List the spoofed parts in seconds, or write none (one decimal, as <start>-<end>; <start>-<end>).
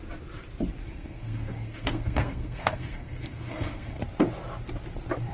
0.8-4.0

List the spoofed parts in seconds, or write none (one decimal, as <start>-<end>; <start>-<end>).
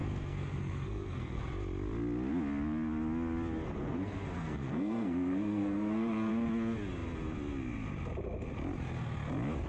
0.0-1.4; 3.8-6.3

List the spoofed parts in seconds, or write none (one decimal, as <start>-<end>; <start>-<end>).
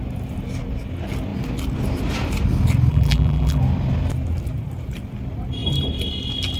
2.9-3.6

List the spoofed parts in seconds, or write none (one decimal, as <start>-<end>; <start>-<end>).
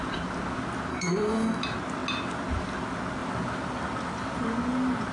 0.9-1.6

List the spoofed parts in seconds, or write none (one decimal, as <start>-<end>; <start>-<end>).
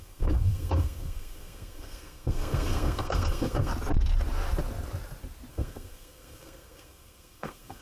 0.0-3.7; 5.5-7.8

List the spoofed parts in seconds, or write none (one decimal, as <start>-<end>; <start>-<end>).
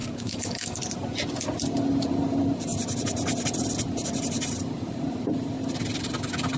0.0-0.8